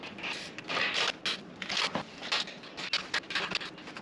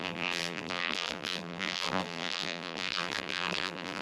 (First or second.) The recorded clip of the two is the first